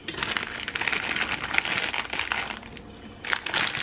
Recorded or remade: recorded